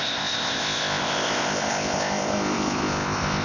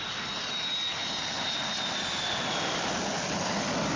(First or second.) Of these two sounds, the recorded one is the second